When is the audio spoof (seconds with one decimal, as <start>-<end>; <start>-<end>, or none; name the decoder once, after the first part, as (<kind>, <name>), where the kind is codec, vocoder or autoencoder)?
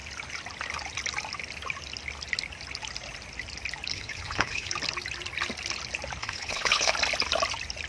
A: 3.9-4.7 (codec, HILCodec); 6.2-6.9